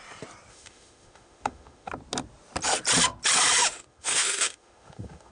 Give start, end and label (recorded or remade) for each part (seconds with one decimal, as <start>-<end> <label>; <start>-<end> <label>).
0.0-0.5 recorded; 0.5-1.9 remade; 1.9-3.6 recorded; 3.6-5.3 remade